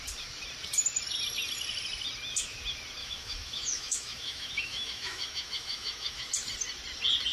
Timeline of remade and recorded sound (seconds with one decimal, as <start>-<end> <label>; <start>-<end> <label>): 0.0-3.0 recorded; 3.0-6.3 remade; 6.3-7.3 recorded

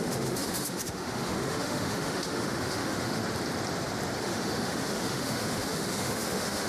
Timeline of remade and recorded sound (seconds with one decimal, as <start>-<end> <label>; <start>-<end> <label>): 0.0-3.2 remade; 3.2-4.2 recorded; 4.2-6.7 remade

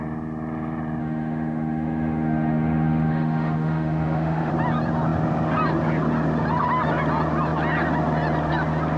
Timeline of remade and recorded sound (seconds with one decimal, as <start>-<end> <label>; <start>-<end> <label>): 0.0-1.0 recorded; 1.0-4.5 remade; 4.5-9.0 recorded

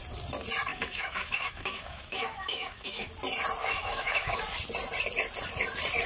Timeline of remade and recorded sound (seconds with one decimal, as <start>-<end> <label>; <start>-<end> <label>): 0.0-0.7 recorded; 0.7-3.1 remade; 3.1-3.6 recorded; 3.6-4.4 remade; 4.4-6.1 recorded

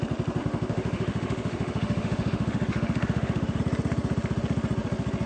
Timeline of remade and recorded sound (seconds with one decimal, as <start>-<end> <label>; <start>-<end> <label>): 0.0-0.4 recorded; 0.4-3.6 remade; 3.6-5.3 recorded

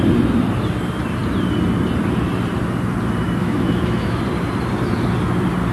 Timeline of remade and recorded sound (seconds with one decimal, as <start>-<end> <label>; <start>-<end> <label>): 0.0-3.4 recorded; 3.4-4.2 remade; 4.2-5.7 recorded

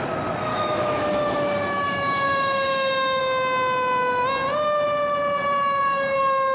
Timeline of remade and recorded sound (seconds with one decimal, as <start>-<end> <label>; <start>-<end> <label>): 0.0-0.5 recorded; 0.5-3.2 remade; 3.2-6.5 recorded